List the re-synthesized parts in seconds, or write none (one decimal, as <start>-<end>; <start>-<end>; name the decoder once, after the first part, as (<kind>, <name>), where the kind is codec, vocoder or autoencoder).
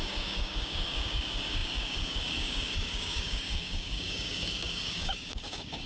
0.0-5.9 (codec, DAC)